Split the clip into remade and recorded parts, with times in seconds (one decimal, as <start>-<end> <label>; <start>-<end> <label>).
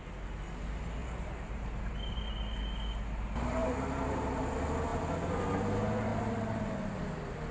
0.0-1.0 recorded; 1.0-2.0 remade; 2.0-3.6 recorded; 3.6-4.5 remade; 4.5-6.1 recorded; 6.1-7.0 remade; 7.0-7.5 recorded